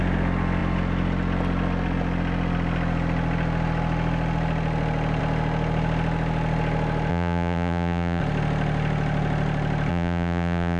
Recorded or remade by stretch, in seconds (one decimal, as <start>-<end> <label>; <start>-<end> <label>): 0.0-7.1 recorded; 7.1-8.2 remade; 8.2-9.9 recorded; 9.9-10.8 remade